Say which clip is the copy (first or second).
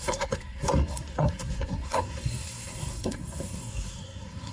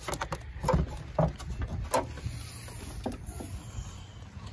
first